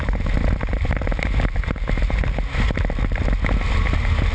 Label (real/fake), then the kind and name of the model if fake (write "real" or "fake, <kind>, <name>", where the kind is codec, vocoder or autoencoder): real